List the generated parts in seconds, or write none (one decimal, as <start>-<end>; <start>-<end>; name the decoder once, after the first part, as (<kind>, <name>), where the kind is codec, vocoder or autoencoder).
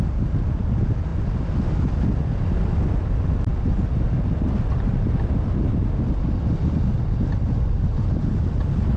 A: none